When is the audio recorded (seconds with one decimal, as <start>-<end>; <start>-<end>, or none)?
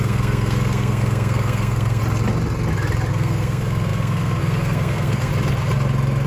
2.0-3.1; 5.3-6.3